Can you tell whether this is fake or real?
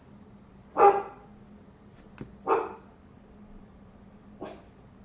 real